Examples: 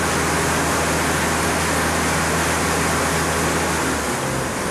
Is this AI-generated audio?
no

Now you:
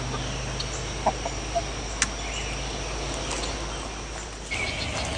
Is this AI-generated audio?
no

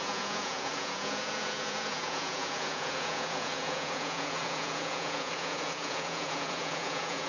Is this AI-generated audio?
yes